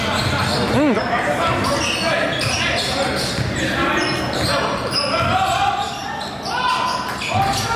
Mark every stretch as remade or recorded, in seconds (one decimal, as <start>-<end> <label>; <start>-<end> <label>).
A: 0.0-7.8 recorded